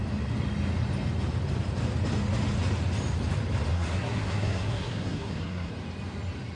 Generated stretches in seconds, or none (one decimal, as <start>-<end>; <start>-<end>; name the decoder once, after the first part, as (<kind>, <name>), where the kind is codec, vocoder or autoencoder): 3.7-5.7 (codec, SNAC)